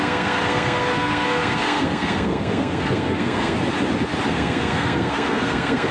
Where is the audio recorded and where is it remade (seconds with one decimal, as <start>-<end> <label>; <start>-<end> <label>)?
0.0-3.6 remade; 3.6-4.3 recorded; 4.3-5.9 remade